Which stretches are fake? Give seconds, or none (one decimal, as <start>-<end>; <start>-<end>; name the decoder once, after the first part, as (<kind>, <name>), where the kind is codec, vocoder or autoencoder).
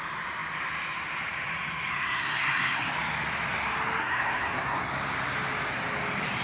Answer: 1.9-2.9 (codec, SNAC); 4.0-4.9